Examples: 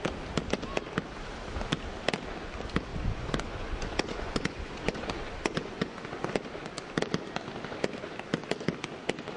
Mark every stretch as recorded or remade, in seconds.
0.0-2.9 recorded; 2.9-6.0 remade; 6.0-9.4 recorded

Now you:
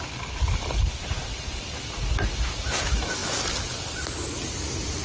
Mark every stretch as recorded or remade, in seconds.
0.0-5.0 recorded

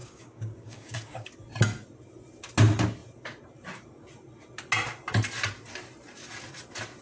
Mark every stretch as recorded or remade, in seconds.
0.0-1.3 remade; 1.3-7.0 recorded

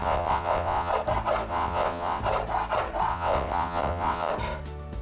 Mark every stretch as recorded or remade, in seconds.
0.0-0.9 remade; 0.9-1.5 recorded; 1.5-2.2 remade; 2.2-3.1 recorded; 3.1-4.3 remade; 4.3-5.0 recorded